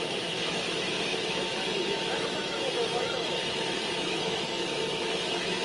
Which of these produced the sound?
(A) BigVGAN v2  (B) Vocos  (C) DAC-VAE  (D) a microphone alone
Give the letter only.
C